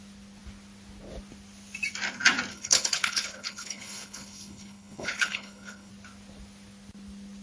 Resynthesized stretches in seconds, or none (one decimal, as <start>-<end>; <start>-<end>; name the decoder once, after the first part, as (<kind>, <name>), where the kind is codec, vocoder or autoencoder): 2.5-5.9 (codec, HILCodec)